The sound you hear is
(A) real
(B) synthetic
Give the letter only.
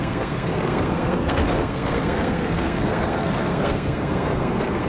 B